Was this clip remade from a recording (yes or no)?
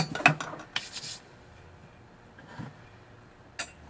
no